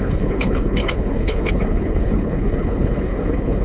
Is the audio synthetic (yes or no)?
yes